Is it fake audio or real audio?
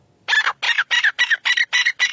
real